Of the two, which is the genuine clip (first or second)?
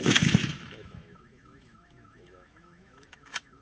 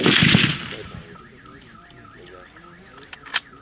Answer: second